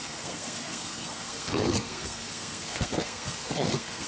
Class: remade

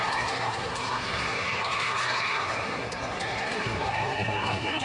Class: remade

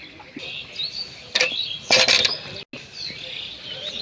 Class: recorded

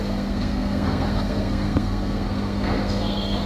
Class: remade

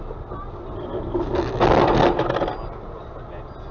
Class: recorded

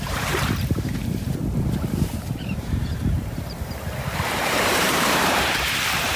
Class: remade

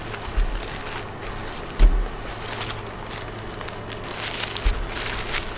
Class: recorded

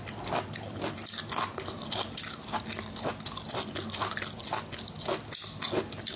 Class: recorded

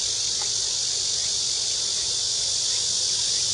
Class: remade